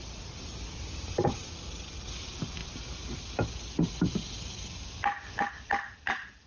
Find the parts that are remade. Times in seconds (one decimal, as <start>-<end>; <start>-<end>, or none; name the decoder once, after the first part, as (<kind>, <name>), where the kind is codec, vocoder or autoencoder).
none